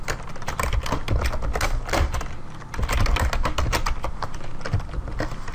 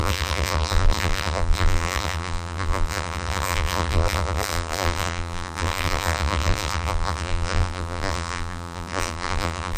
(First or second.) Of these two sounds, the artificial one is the second